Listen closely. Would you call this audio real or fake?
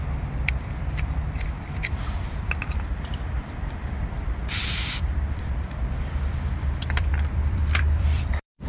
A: fake